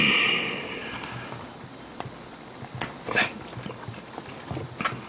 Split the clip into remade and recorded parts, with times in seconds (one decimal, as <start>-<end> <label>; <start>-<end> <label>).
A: 0.0-5.1 recorded